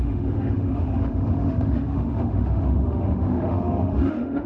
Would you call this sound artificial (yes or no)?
yes